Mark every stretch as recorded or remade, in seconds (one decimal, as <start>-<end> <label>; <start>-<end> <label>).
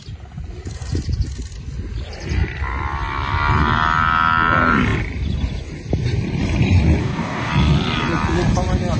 0.0-7.0 recorded; 7.0-7.5 remade; 7.5-9.0 recorded